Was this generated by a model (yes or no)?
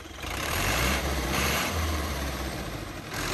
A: yes